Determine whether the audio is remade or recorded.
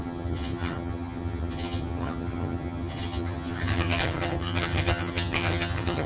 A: remade